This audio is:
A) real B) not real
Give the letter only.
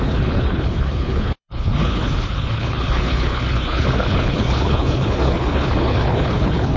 B